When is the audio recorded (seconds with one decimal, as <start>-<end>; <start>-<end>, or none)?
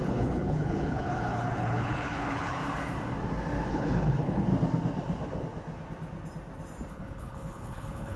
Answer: 2.6-3.7; 4.5-6.9